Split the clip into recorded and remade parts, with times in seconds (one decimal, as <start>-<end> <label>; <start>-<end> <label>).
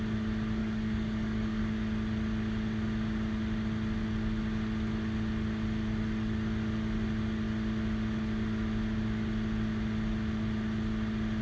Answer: 0.0-0.6 recorded; 0.6-1.6 remade; 1.6-11.4 recorded